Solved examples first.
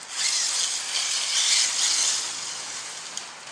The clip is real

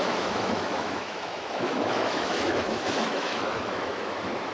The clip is fake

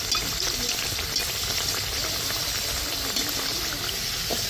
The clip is real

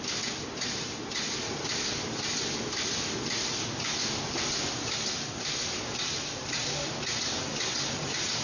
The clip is real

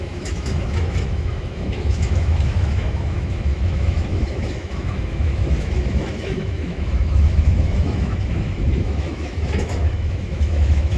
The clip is fake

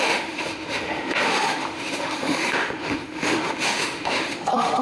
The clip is fake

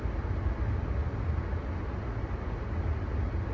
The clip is real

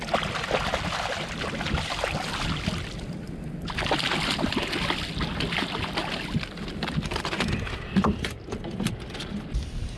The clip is real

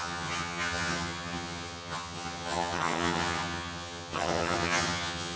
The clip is fake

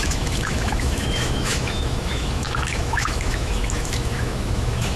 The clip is fake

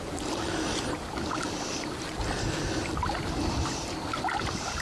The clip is real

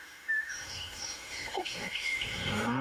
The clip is fake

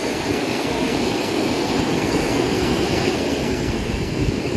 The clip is fake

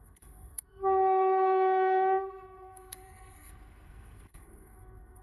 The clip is fake